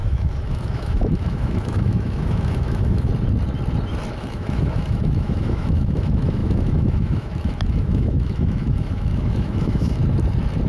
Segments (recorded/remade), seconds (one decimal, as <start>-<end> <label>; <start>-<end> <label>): 0.0-3.1 remade; 3.1-4.2 recorded; 4.2-10.0 remade; 10.0-10.7 recorded